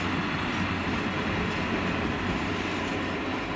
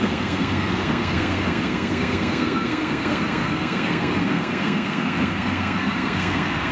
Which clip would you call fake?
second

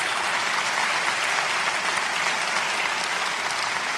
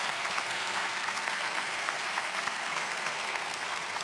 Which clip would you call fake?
second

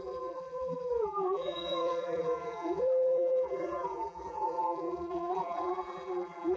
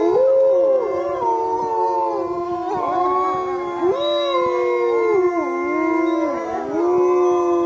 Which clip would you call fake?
first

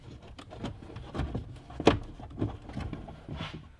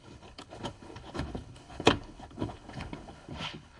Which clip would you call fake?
second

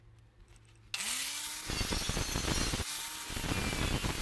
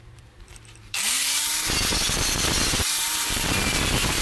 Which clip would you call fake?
second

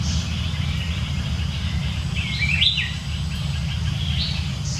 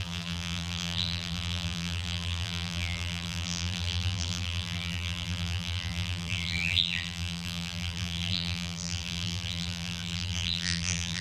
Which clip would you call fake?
second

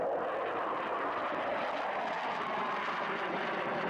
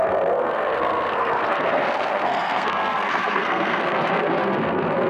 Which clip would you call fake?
second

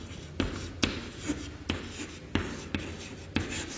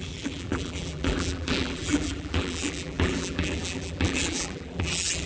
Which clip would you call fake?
second